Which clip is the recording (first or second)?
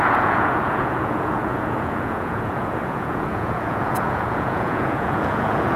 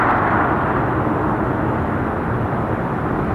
second